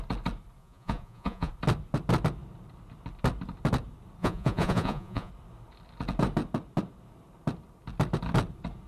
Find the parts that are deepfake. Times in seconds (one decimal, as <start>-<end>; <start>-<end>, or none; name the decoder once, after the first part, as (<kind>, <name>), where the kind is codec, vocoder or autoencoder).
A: 0.6-1.5 (vocoder, Vocos); 4.2-5.3